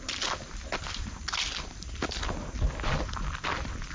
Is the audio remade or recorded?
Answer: recorded